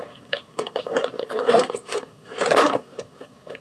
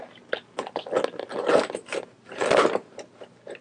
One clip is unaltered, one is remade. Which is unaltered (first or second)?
second